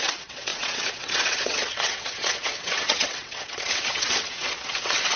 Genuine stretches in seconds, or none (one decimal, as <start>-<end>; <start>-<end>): none